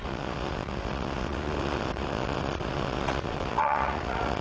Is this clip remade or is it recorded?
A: remade